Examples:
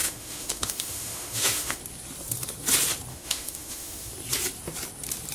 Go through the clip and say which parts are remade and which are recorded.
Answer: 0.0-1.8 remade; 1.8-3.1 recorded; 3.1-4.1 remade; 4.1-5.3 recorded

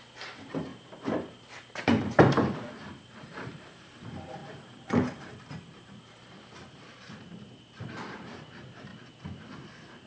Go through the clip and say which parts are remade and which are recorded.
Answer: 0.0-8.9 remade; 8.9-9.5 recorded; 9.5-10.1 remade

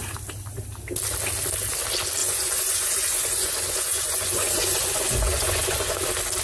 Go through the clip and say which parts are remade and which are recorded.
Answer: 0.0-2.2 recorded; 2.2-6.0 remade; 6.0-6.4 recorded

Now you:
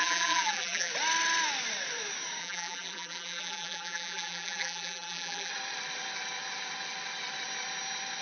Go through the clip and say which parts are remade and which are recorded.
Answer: 0.0-0.9 remade; 0.9-2.4 recorded; 2.4-5.5 remade; 5.5-8.2 recorded

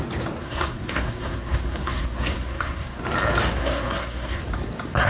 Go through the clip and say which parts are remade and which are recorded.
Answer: 0.0-0.4 recorded; 0.4-3.0 remade; 3.0-3.6 recorded; 3.6-4.4 remade; 4.4-5.1 recorded

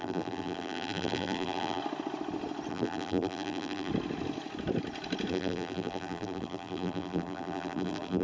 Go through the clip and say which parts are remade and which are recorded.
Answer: 0.0-1.8 remade; 1.8-2.7 recorded; 2.7-3.9 remade; 3.9-5.3 recorded; 5.3-8.2 remade

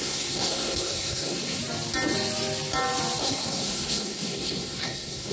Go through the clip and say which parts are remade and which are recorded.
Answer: 0.0-1.6 remade; 1.6-3.2 recorded; 3.2-5.3 remade

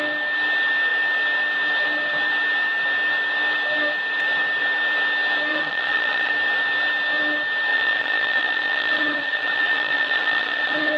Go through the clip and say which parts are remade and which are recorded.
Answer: 0.0-5.5 recorded; 5.5-6.3 remade; 6.3-7.7 recorded; 7.7-11.0 remade